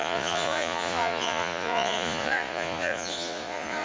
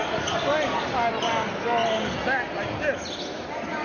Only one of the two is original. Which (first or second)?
second